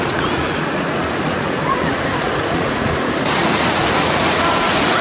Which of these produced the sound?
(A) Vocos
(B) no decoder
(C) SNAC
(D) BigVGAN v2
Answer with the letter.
A